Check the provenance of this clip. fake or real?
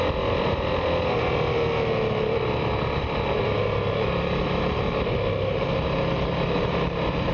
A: real